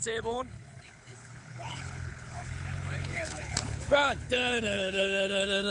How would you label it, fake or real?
fake